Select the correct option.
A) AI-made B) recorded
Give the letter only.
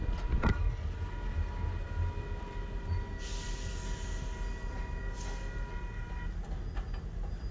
B